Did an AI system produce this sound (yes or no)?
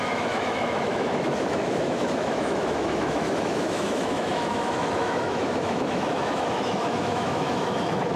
yes